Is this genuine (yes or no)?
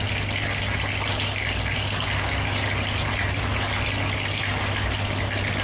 yes